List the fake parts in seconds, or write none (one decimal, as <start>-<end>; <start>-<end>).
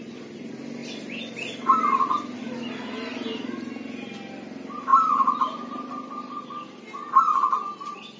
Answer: none